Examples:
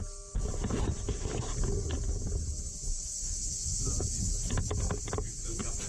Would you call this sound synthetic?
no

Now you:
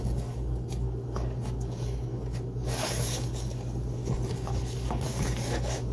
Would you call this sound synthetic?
yes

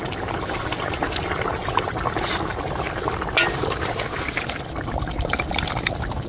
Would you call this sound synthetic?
no